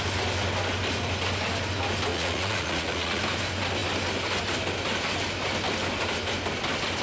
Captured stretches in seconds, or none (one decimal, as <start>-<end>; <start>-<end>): 0.0-2.1; 3.2-7.0